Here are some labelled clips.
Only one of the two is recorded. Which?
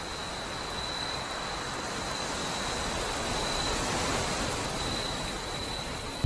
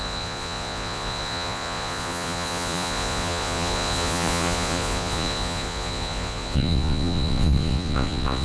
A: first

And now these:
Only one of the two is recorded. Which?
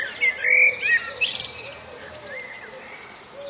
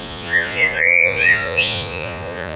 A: first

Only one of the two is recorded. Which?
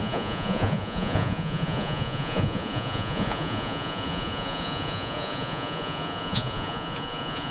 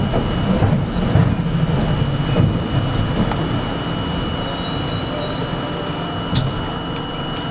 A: second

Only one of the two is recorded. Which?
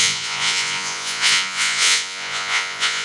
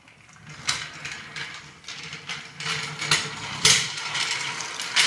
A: second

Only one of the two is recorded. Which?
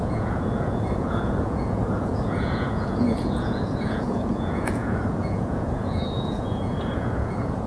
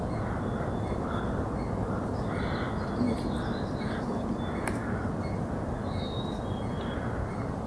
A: second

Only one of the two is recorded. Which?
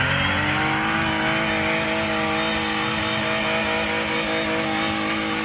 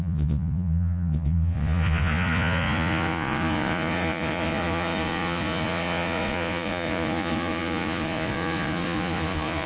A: first